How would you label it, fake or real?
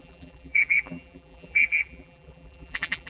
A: fake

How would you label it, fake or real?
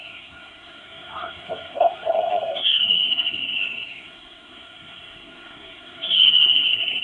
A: fake